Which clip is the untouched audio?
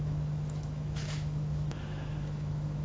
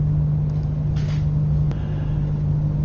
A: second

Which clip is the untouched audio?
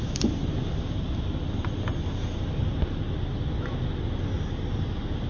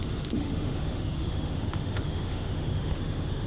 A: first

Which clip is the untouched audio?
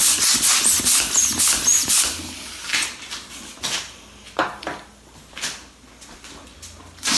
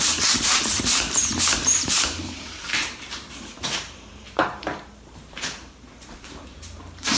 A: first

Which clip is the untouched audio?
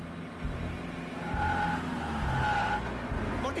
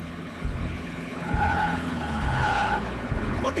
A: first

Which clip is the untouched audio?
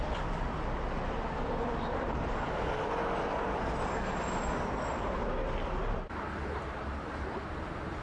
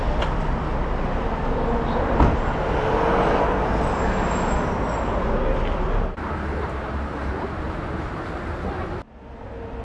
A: second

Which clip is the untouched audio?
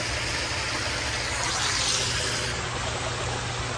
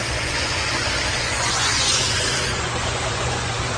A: first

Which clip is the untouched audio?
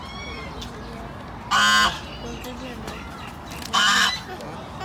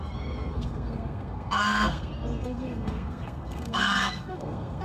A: first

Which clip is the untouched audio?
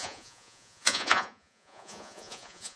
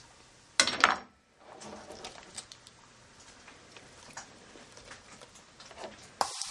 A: second